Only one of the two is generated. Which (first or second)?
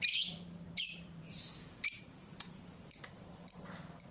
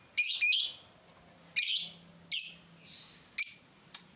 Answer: first